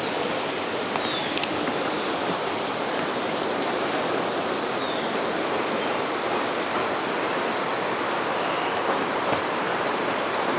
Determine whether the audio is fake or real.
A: real